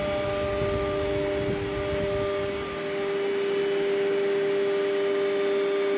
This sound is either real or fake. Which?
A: real